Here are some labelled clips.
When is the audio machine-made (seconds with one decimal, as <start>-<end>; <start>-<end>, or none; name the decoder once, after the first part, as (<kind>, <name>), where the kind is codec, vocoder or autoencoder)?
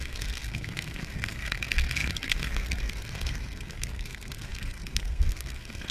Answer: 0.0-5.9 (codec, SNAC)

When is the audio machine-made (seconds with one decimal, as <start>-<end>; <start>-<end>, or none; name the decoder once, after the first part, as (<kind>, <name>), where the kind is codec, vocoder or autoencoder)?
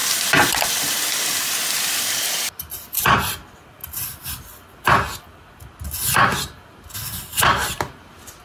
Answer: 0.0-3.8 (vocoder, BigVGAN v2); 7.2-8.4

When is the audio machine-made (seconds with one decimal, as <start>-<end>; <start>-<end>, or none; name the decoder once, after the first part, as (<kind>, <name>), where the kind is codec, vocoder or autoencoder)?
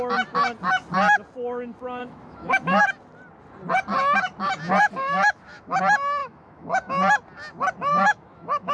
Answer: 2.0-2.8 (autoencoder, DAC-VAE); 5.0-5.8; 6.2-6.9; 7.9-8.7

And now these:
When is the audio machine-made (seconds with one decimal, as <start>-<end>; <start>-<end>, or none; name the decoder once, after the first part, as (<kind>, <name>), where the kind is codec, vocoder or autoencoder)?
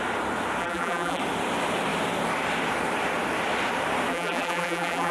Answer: 0.6-1.2 (vocoder, BigVGAN v2); 4.1-5.1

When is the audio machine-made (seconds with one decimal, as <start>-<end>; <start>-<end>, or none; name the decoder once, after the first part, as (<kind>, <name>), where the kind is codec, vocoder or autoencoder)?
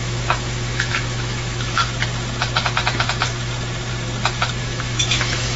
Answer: 0.0-1.8 (autoencoder, DAC-VAE); 4.6-5.6